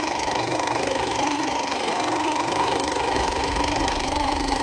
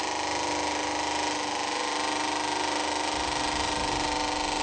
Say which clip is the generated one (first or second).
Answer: first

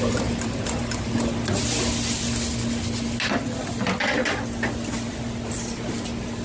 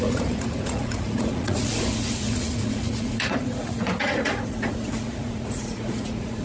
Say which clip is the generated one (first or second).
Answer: second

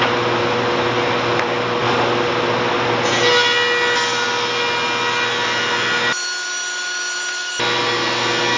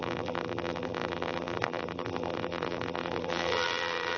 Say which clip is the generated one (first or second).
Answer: second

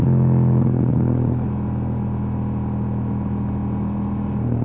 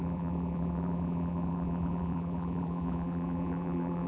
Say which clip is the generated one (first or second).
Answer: second